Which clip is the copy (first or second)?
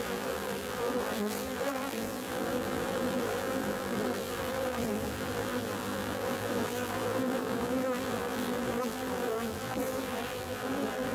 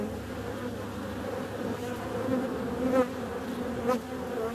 first